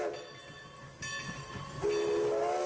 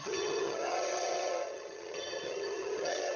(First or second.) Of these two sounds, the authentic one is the first